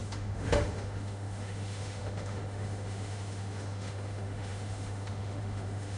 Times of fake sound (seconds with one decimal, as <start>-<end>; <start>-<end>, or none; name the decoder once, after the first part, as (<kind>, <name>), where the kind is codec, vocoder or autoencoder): 0.0-6.0 (autoencoder, DAC-VAE)